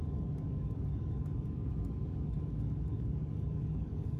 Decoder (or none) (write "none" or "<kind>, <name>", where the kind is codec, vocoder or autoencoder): codec, DAC